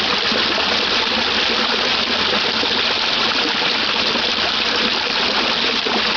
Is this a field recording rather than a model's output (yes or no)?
yes